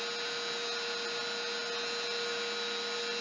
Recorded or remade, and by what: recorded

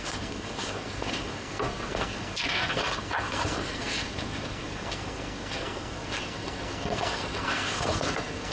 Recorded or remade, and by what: remade, codec, SNAC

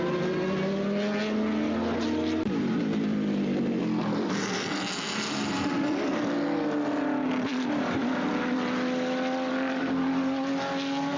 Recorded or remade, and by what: recorded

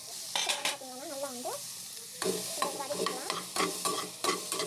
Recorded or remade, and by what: remade, vocoder, BigVGAN v2